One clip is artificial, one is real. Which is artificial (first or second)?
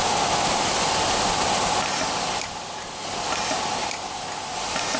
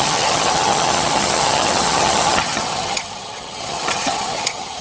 second